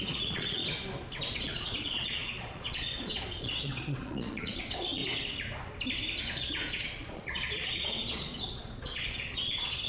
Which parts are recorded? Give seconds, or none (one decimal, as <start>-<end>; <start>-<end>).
0.6-1.3; 5.0-6.2